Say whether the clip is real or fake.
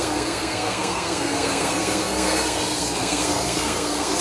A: fake